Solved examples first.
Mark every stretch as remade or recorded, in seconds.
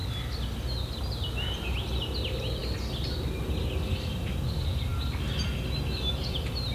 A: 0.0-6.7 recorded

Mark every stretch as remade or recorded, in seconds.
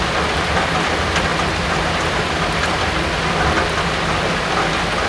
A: 0.0-5.1 recorded